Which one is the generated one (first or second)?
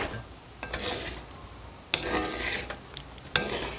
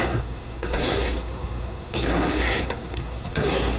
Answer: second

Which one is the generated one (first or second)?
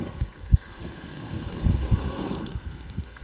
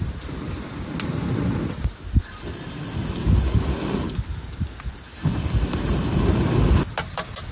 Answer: first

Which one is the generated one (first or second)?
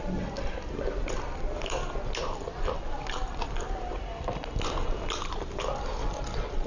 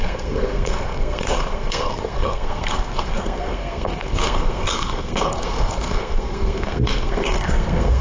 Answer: second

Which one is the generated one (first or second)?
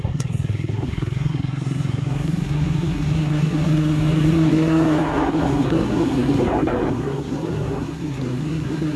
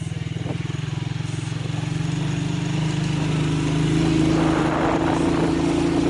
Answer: first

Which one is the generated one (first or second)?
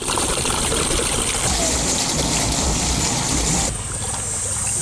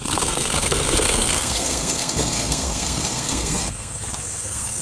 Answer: second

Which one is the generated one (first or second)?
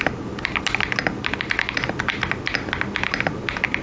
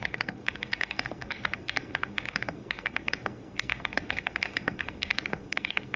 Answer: second